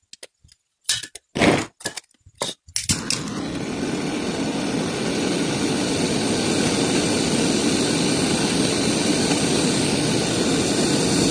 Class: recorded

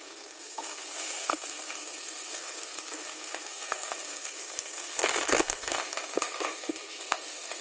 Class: remade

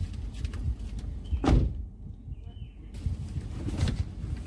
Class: recorded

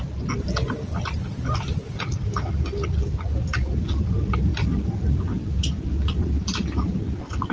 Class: recorded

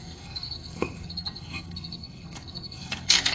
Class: remade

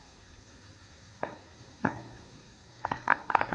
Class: remade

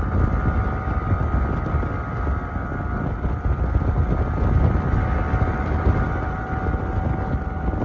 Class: recorded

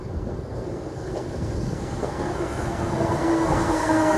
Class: remade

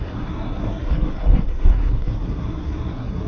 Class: remade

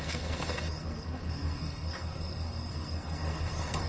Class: remade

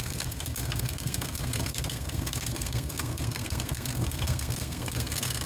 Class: remade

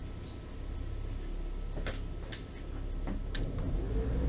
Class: recorded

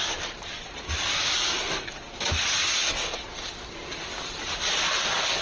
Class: recorded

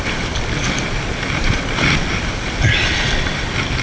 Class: recorded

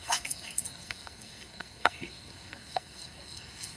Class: remade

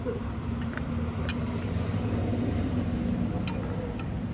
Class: recorded